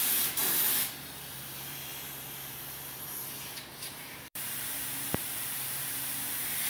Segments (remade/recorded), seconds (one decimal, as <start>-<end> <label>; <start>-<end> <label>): 0.0-0.4 remade; 0.4-1.3 recorded; 1.3-6.7 remade